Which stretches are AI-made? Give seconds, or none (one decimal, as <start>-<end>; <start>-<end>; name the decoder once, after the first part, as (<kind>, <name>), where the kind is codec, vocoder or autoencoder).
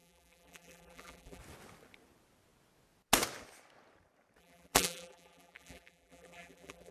0.0-1.4 (vocoder, BigVGAN v2); 4.4-6.9